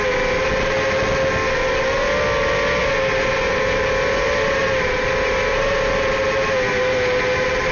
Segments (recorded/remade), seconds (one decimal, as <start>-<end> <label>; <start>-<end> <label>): 0.0-2.8 recorded; 2.8-7.7 remade